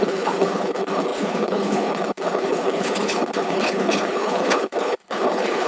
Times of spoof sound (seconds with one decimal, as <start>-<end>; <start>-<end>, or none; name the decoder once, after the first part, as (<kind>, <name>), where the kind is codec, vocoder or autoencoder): 0.0-5.7 (codec, HILCodec)